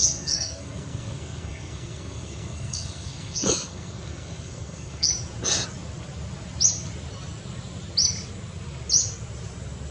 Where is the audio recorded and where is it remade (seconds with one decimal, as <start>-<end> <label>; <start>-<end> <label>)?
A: 0.0-5.1 remade; 5.1-9.9 recorded